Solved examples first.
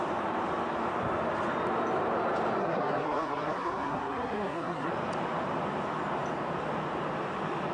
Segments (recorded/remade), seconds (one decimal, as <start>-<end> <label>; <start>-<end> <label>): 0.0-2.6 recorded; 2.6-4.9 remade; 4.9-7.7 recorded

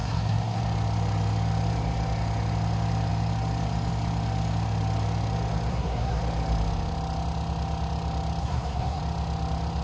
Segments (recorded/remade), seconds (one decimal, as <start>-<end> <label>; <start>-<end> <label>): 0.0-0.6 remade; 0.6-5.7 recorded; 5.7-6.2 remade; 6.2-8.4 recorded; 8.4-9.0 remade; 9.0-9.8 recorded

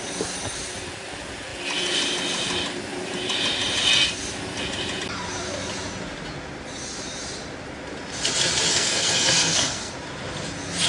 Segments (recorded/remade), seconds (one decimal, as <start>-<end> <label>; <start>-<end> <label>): 0.0-8.7 recorded; 8.7-9.9 remade; 9.9-10.9 recorded

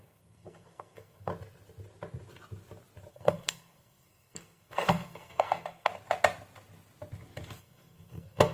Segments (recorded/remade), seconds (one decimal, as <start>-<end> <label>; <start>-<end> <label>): 0.0-1.3 remade; 1.3-3.1 recorded; 3.1-5.9 remade; 5.9-7.6 recorded; 7.6-8.5 remade